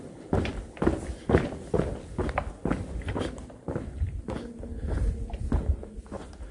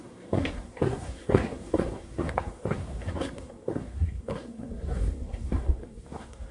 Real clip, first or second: first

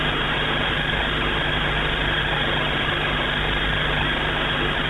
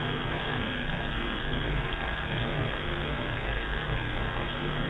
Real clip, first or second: first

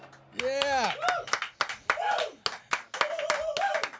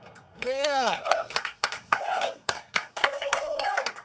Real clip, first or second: first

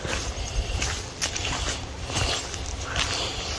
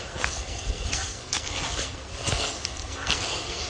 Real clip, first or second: first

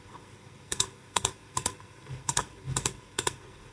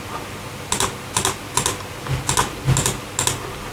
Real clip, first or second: second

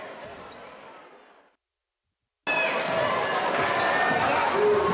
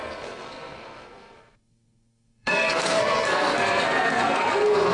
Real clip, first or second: first